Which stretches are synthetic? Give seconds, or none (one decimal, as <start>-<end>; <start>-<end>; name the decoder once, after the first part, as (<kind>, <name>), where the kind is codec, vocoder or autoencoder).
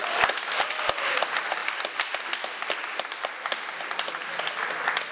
none